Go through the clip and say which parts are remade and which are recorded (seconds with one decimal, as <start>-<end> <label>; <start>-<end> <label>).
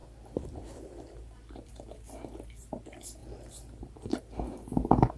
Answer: 0.0-1.7 remade; 1.7-3.2 recorded; 3.2-4.2 remade; 4.2-5.2 recorded